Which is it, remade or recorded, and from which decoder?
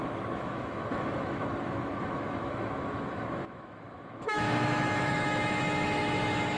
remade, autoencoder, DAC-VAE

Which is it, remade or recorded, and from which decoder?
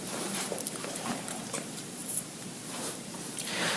remade, vocoder, BigVGAN v2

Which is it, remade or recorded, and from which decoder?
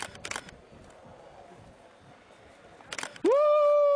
recorded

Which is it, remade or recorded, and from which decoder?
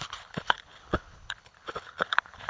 remade, codec, HILCodec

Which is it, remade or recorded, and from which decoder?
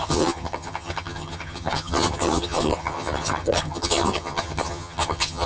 remade, vocoder, HiFi-GAN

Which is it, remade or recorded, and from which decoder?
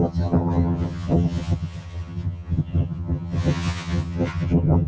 remade, vocoder, HiFi-GAN